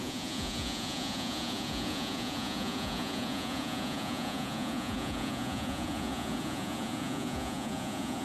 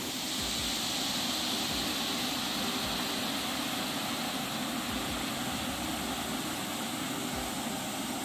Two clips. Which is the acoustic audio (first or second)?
second